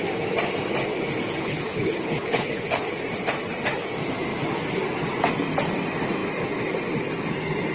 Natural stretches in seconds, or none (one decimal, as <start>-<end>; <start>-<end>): 0.0-1.4; 2.9-7.7